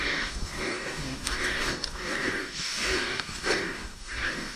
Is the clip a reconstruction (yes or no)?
yes